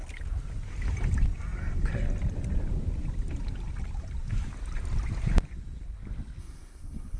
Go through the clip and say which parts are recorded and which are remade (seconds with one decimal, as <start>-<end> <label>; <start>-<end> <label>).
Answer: 0.0-6.4 recorded; 6.4-7.2 remade